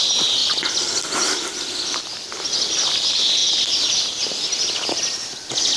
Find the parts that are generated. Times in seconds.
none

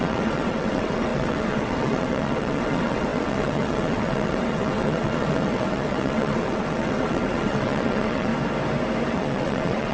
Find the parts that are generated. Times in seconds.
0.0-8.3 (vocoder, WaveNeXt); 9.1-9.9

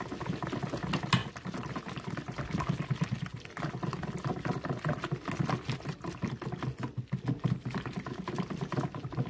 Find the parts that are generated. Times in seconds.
none